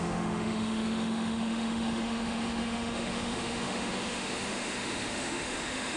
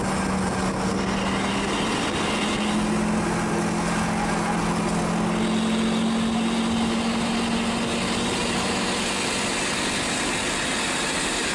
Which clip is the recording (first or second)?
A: second